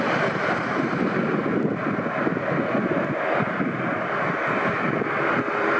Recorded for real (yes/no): yes